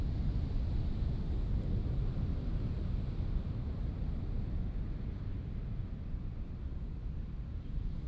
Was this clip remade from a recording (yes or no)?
no